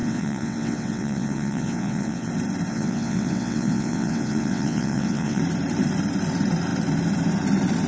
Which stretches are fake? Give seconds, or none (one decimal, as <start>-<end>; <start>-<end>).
0.0-2.3; 2.7-5.4